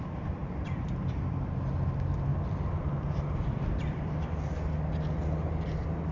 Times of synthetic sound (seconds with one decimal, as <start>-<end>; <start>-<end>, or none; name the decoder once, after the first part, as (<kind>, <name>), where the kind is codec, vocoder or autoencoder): 0.4-1.4 (vocoder, BigVGAN v2); 2.3-4.2